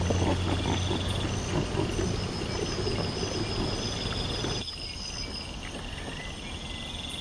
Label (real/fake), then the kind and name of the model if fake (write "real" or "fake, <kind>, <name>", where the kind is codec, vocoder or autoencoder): real